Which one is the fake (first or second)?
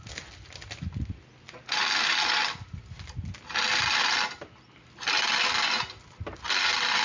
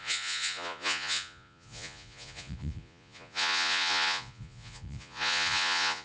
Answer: second